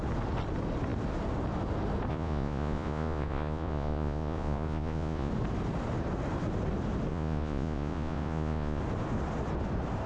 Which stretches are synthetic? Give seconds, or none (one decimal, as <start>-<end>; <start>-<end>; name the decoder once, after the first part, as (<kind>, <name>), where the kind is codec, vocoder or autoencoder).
2.1-5.3 (vocoder, Vocos); 7.1-8.8